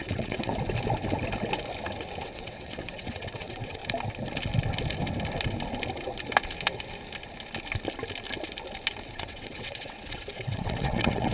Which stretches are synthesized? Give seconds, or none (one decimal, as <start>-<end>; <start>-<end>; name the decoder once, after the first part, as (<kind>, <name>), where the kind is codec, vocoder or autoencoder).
0.0-0.5 (vocoder, WaveNeXt); 2.2-3.8; 9.0-11.3